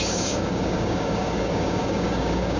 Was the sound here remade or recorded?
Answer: remade